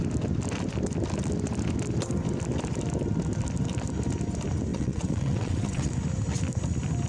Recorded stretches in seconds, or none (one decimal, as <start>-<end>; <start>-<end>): 0.0-4.7; 5.9-7.1